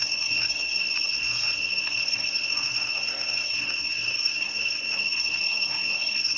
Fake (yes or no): yes